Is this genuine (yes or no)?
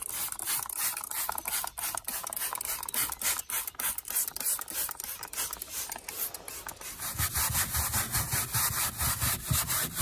yes